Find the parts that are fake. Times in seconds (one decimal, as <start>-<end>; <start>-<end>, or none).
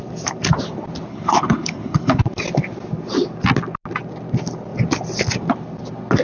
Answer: 1.1-2.2